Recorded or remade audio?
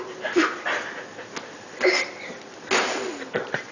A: recorded